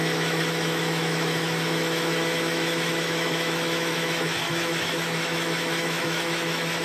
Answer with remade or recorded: remade